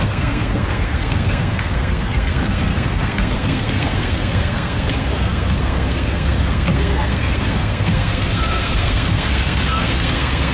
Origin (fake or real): fake